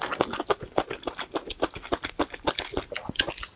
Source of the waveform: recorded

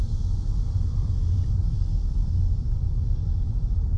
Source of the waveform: recorded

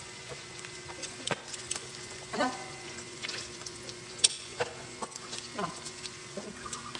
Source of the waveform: remade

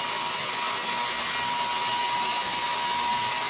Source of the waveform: recorded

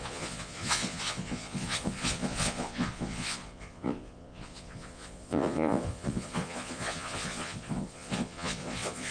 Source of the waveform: remade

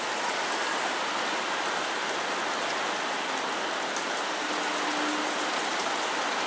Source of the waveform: recorded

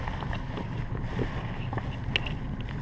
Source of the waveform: recorded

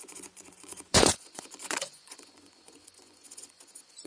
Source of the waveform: remade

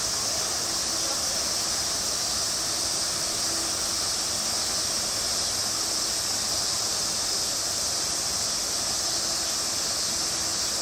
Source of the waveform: recorded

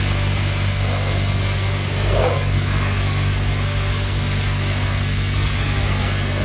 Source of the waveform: remade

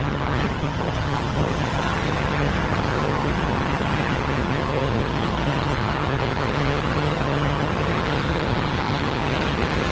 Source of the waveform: remade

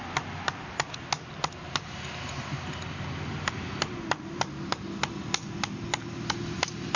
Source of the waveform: recorded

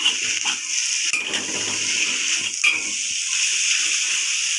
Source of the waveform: recorded